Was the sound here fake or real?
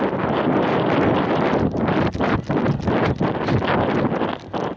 real